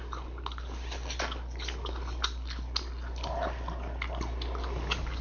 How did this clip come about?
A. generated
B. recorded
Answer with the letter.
B